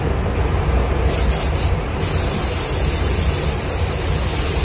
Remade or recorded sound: recorded